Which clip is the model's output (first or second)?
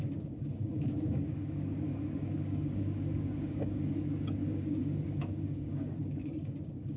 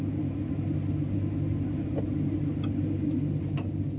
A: first